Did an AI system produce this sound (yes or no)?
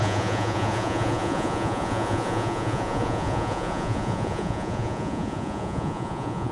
yes